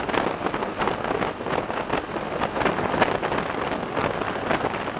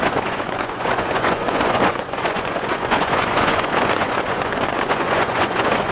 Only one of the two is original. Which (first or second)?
first